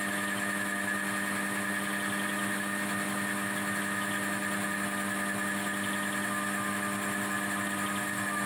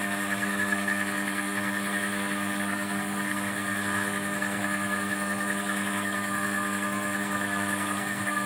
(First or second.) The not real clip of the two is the second